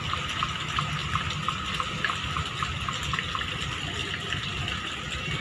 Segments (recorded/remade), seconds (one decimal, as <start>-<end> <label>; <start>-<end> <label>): 0.0-5.4 recorded